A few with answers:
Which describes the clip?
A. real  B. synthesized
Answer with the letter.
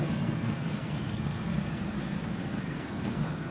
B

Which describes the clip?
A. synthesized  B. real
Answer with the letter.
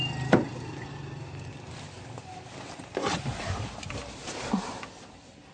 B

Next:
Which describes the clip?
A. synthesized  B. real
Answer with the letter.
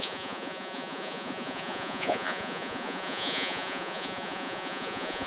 A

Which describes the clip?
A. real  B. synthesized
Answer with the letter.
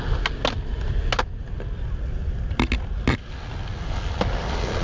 A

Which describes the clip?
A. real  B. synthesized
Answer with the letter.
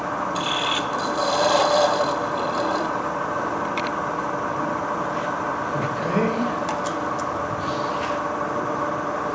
B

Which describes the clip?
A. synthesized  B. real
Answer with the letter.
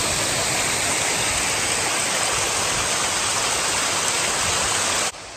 B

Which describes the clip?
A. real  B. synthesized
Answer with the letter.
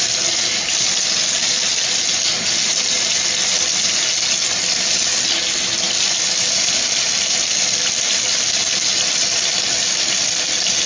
A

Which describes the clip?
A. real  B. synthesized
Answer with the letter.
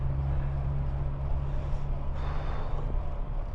A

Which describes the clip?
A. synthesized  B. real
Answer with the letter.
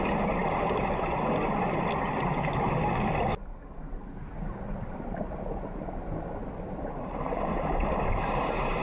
B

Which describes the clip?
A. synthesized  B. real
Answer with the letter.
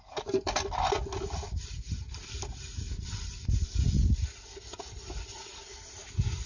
B